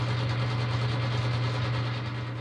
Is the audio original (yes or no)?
yes